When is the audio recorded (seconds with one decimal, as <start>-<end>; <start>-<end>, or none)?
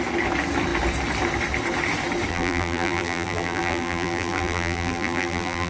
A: 0.0-2.3